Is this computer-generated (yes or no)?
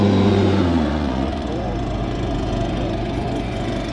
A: yes